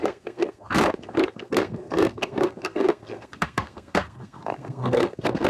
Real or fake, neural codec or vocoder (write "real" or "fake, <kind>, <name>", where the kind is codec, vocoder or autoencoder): fake, codec, SNAC